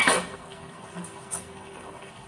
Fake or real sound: fake